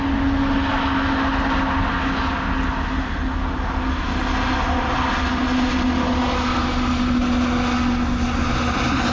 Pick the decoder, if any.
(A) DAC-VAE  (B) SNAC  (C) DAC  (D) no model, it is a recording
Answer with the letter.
D